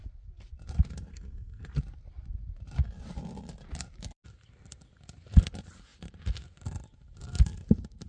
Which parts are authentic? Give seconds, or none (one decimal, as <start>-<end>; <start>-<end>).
0.0-1.1; 1.8-8.1